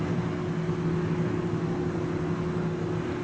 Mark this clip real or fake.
real